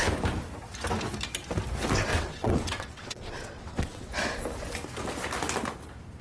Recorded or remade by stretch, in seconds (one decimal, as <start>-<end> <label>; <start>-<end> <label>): 0.0-2.1 recorded; 2.1-4.1 remade; 4.1-6.2 recorded